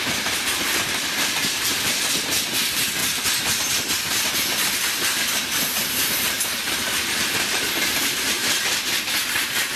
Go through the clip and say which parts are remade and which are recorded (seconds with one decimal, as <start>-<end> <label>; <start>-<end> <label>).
0.0-3.0 remade; 3.0-3.8 recorded; 3.8-9.8 remade

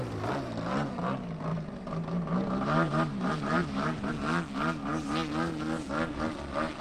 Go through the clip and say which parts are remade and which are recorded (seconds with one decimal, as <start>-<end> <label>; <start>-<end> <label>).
0.0-1.5 recorded; 1.5-4.1 remade; 4.1-6.8 recorded